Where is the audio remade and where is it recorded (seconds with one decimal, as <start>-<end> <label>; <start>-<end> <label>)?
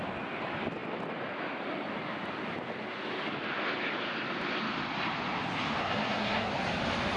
0.0-5.8 recorded; 5.8-6.5 remade; 6.5-7.2 recorded